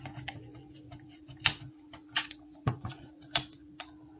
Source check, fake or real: fake